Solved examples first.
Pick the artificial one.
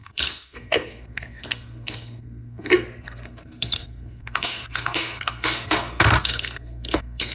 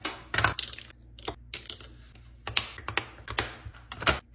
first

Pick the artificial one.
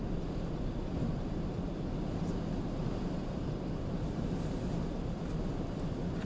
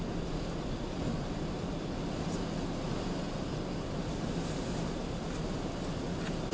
first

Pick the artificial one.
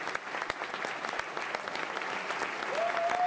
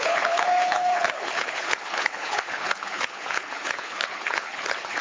second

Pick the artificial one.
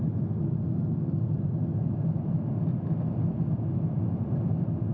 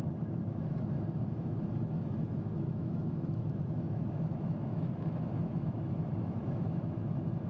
second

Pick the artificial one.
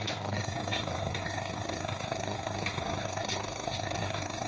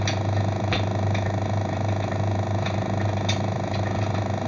first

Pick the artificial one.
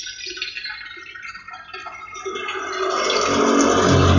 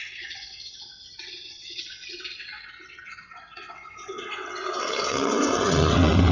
second